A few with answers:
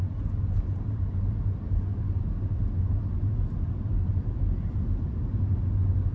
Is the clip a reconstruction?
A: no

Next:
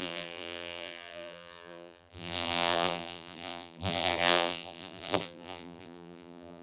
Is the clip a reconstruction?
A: yes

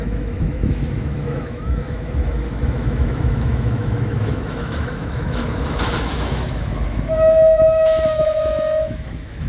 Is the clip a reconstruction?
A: yes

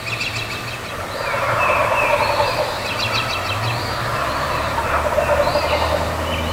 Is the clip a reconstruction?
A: no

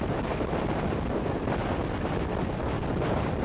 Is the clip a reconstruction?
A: no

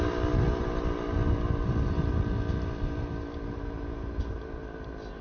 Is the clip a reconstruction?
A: no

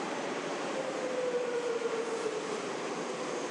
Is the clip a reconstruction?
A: no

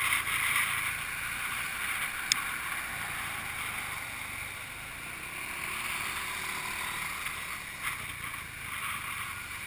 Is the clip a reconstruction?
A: no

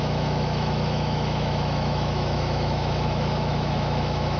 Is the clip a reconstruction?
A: yes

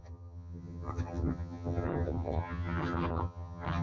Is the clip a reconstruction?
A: yes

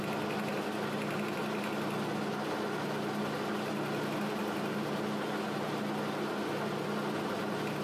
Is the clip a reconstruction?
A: no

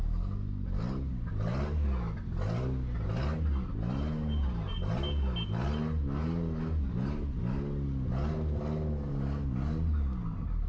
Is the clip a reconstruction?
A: no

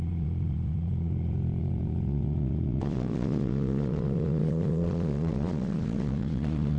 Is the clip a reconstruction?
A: yes